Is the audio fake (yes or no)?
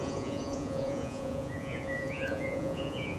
yes